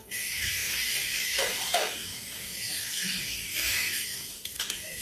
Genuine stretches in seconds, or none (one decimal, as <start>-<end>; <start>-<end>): none